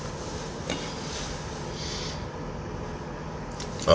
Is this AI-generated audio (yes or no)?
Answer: no